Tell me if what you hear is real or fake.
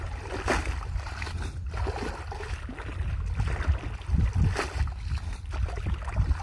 real